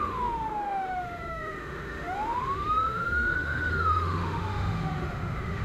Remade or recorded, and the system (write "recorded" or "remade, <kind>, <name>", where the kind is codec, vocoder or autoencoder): remade, autoencoder, DAC-VAE